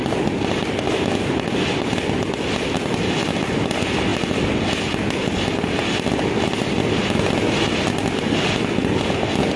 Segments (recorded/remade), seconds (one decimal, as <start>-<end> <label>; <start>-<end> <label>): 0.0-9.6 recorded

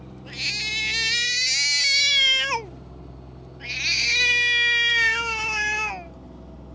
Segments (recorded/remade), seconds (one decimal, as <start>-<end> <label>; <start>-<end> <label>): 0.0-4.9 recorded; 4.9-5.9 remade; 5.9-6.7 recorded

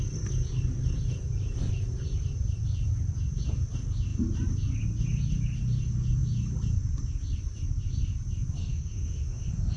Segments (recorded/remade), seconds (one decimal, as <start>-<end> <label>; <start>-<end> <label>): 0.0-8.6 recorded; 8.6-9.8 remade

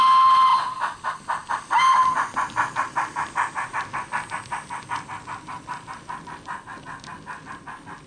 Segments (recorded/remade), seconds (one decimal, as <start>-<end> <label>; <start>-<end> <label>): 0.0-8.1 recorded